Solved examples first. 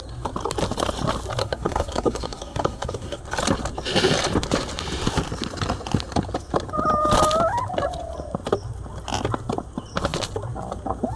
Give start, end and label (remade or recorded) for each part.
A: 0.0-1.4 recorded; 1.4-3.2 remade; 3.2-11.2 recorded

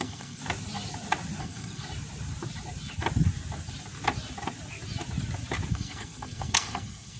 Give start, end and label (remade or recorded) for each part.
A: 0.0-0.4 remade; 0.4-1.4 recorded; 1.4-1.8 remade; 1.8-5.7 recorded; 5.7-7.2 remade

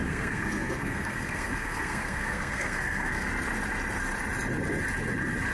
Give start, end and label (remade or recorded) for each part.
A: 0.0-3.3 remade; 3.3-5.5 recorded

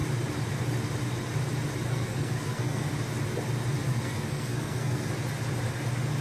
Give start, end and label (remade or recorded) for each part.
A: 0.0-1.9 recorded; 1.9-2.9 remade; 2.9-3.9 recorded; 3.9-5.1 remade; 5.1-6.2 recorded

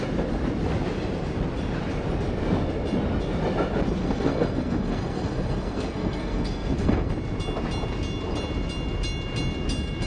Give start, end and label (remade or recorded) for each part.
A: 0.0-4.0 recorded; 4.0-7.1 remade; 7.1-10.1 recorded

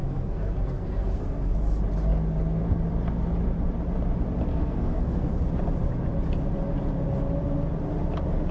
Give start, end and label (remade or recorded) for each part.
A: 0.0-1.5 remade; 1.5-4.5 recorded; 4.5-5.3 remade; 5.3-8.5 recorded